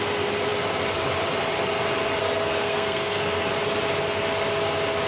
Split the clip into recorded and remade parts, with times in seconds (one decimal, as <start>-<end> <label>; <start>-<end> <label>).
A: 0.0-2.2 recorded; 2.2-3.5 remade; 3.5-5.1 recorded